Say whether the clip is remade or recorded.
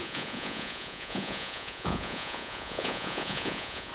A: remade